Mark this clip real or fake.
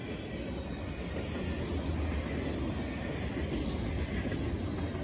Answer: real